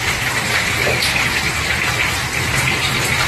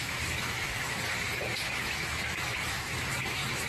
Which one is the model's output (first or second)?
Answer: second